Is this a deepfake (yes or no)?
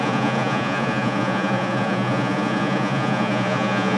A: yes